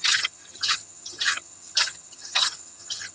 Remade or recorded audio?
remade